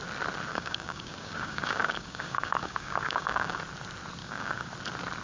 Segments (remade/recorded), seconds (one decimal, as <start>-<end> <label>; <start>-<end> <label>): 0.0-0.5 recorded; 0.5-3.6 remade; 3.6-4.2 recorded; 4.2-4.7 remade; 4.7-5.2 recorded

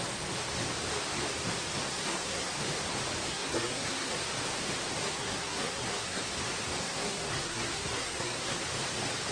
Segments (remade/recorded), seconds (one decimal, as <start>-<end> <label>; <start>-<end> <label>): 0.0-1.9 recorded; 1.9-2.5 remade; 2.5-3.3 recorded; 3.3-4.1 remade; 4.1-5.0 recorded; 5.0-6.2 remade; 6.2-6.8 recorded; 6.8-8.6 remade; 8.6-9.3 recorded

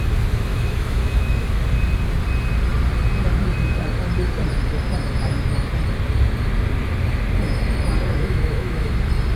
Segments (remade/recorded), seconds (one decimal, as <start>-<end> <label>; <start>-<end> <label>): 0.0-0.5 recorded; 0.5-1.6 remade; 1.6-8.1 recorded; 8.1-8.9 remade; 8.9-9.4 recorded